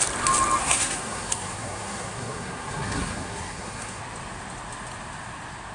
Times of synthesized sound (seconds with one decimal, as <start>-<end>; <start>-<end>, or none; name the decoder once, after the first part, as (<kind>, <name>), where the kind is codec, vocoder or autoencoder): 0.6-4.0 (codec, SNAC)